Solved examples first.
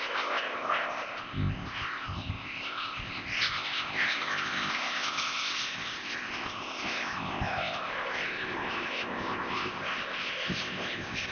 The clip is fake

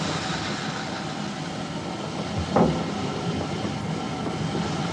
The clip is real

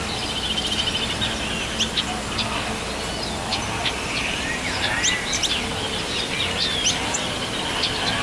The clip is real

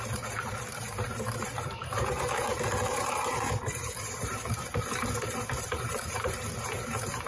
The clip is fake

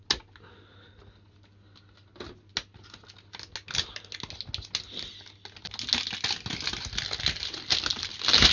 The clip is real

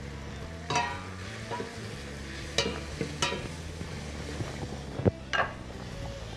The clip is real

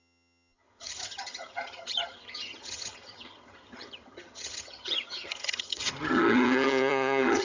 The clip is fake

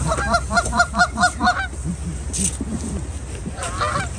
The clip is real